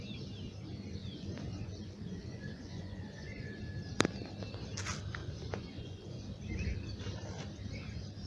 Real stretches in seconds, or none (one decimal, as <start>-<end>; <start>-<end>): 0.0-1.0; 3.6-5.2; 6.2-8.3